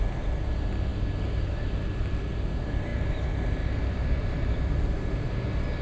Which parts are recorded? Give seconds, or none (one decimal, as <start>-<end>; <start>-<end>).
0.0-5.8